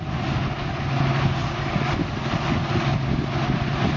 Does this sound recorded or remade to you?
recorded